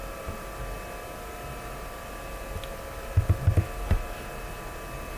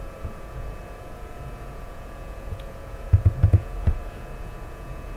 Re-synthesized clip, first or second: second